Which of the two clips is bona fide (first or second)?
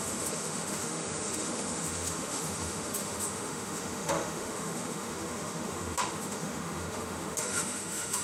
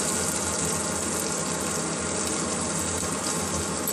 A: second